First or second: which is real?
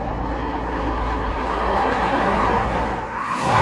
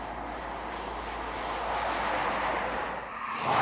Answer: second